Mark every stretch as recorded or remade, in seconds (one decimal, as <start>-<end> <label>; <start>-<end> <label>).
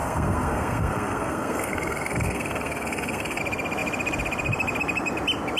0.0-3.4 remade; 3.4-5.6 recorded